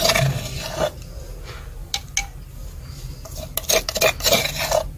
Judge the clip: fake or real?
real